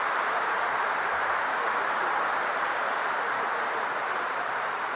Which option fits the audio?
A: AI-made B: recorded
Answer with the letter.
A